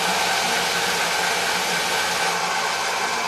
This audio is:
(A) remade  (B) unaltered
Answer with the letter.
B